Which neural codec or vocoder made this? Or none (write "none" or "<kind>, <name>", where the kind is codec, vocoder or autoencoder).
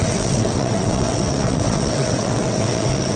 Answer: vocoder, WaveNeXt